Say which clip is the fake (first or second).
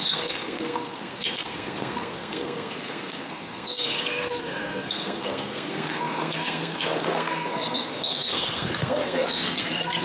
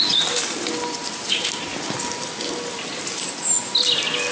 first